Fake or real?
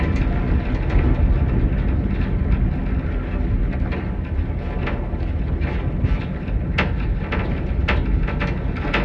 real